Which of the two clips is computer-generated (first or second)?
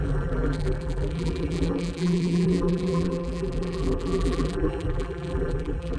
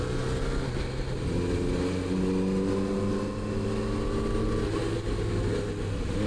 first